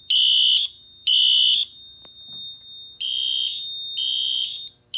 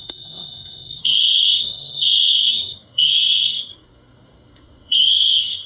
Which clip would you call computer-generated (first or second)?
second